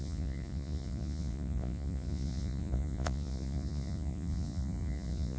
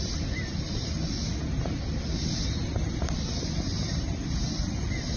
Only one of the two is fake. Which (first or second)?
first